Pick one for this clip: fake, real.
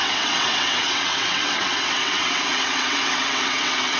fake